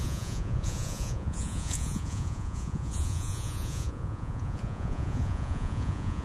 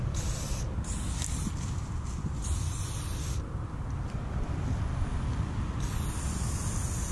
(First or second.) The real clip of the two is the second